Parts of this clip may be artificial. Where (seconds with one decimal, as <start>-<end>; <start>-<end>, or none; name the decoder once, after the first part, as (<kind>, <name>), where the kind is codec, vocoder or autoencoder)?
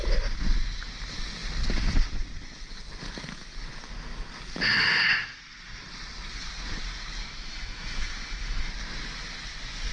7.2-8.7 (autoencoder, DAC-VAE)